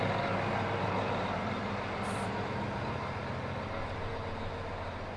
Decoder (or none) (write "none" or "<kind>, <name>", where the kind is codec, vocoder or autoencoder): none